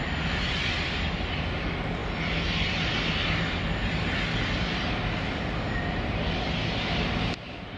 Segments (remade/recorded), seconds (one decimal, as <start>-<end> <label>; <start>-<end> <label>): 0.0-7.8 recorded